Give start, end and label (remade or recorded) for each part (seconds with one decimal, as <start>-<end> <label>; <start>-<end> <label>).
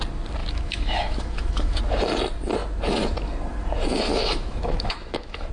0.0-0.4 recorded; 0.4-1.8 remade; 1.8-4.1 recorded; 4.1-5.5 remade